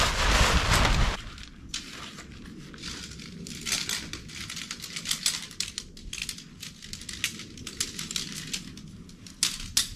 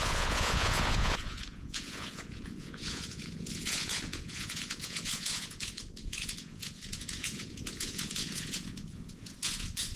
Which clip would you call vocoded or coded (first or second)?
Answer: second